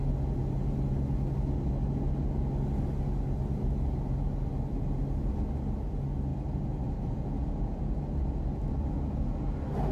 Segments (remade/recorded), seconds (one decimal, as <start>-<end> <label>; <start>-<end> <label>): 0.0-9.9 recorded